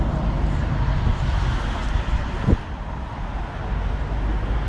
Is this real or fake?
real